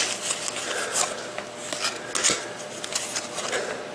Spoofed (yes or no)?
no